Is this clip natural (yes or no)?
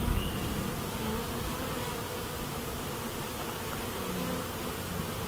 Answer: yes